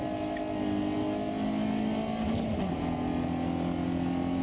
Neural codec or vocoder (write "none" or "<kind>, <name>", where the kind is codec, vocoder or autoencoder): none